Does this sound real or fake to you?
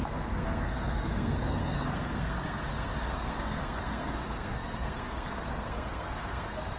fake